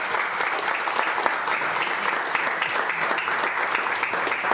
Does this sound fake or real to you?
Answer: real